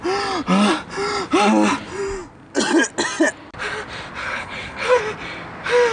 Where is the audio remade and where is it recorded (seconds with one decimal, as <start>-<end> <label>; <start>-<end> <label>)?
0.0-4.2 recorded; 4.2-5.0 remade; 5.0-5.9 recorded